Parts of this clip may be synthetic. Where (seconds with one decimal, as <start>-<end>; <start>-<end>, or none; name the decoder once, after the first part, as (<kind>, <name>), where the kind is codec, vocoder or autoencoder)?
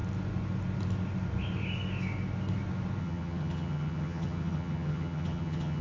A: 3.0-5.8 (vocoder, HiFi-GAN)